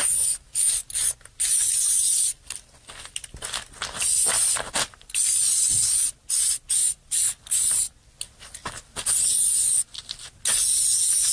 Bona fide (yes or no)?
yes